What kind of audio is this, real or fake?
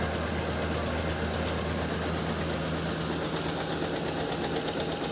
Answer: real